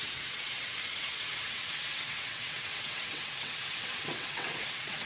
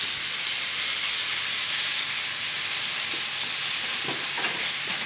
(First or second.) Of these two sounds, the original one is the second